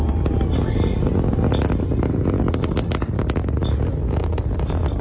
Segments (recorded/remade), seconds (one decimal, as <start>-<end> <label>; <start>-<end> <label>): 0.0-5.0 recorded